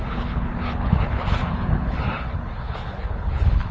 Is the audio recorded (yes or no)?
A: no